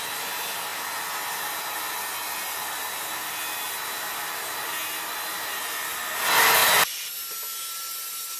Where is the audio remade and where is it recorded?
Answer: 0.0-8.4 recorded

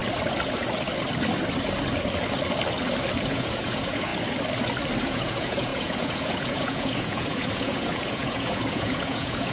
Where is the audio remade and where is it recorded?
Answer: 0.0-3.3 recorded; 3.3-4.1 remade; 4.1-5.0 recorded; 5.0-9.5 remade

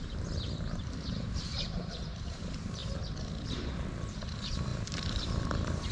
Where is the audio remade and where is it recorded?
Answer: 0.0-2.8 remade; 2.8-4.1 recorded; 4.1-5.9 remade

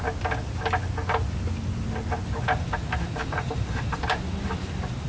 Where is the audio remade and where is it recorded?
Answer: 0.0-3.2 recorded; 3.2-4.2 remade; 4.2-5.1 recorded

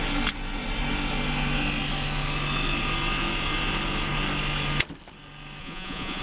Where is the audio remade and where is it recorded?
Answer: 0.0-5.6 recorded; 5.6-6.2 remade

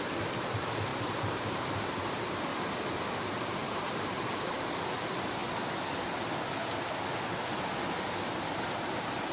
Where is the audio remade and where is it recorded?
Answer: 0.0-2.5 remade; 2.5-3.2 recorded; 3.2-5.4 remade; 5.4-8.6 recorded; 8.6-9.3 remade

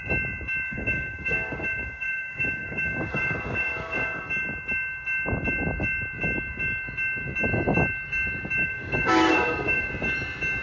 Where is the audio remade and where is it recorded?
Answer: 0.0-0.7 recorded; 0.7-4.2 remade; 4.2-8.6 recorded; 8.6-9.9 remade; 9.9-10.6 recorded

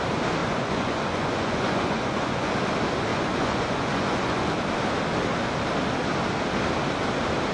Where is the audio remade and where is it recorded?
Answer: 0.0-0.4 recorded; 0.4-2.5 remade; 2.5-3.1 recorded; 3.1-4.6 remade; 4.6-7.5 recorded